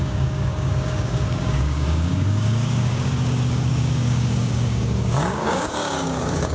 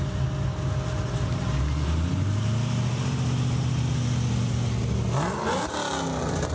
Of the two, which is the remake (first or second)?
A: first